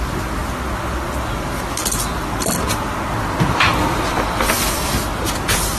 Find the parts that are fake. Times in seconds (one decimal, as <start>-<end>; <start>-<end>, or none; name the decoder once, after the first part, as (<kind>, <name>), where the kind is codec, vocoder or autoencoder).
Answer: none